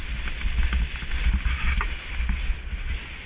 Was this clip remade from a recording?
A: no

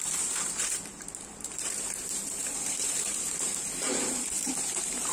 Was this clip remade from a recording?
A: yes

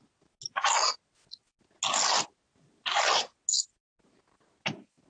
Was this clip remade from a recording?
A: no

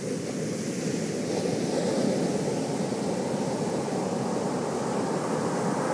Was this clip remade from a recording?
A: no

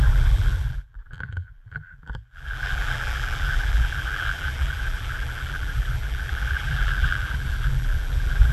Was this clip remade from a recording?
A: yes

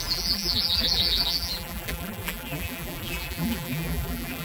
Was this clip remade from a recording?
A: yes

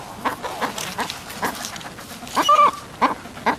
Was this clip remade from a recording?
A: no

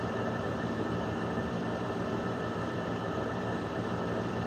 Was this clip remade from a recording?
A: yes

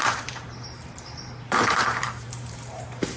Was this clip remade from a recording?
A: yes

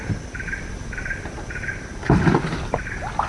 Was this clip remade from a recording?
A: no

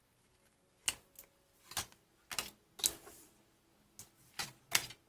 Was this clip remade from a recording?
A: no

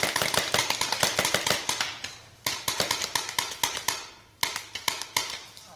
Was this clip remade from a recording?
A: no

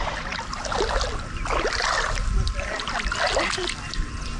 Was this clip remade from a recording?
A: no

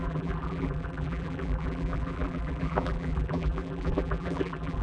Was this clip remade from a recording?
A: yes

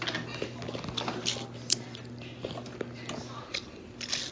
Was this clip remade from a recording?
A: no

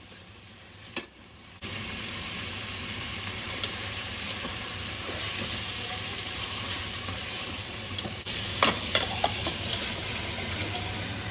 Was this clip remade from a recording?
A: yes